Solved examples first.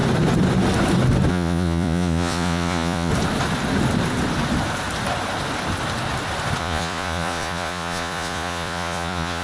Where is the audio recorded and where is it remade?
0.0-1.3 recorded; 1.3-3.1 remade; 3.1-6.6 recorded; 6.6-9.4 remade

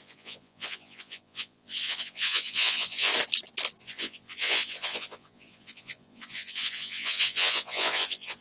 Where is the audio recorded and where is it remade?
0.0-3.1 remade; 3.1-3.8 recorded; 3.8-8.4 remade

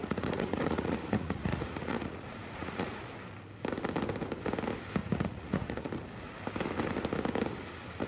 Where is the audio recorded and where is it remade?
0.0-3.0 remade; 3.0-5.0 recorded; 5.0-5.9 remade; 5.9-8.1 recorded

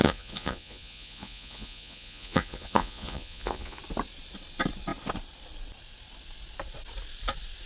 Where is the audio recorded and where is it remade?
0.0-3.8 remade; 3.8-7.7 recorded

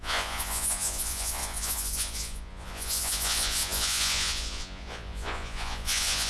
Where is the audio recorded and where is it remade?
0.0-6.3 remade

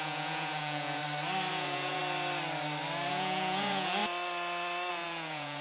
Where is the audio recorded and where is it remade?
0.0-1.0 remade; 1.0-1.5 recorded; 1.5-2.0 remade; 2.0-3.1 recorded; 3.1-4.0 remade; 4.0-4.9 recorded; 4.9-5.6 remade